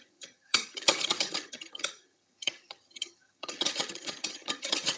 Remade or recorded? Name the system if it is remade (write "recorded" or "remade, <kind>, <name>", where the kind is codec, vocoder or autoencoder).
remade, vocoder, HiFi-GAN